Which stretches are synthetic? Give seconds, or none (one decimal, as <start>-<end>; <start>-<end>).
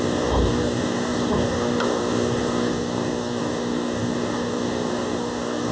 0.0-5.7